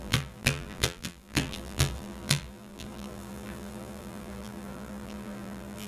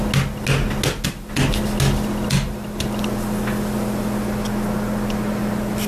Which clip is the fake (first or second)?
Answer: first